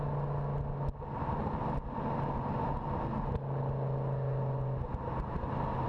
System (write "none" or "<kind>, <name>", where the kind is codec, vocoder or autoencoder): none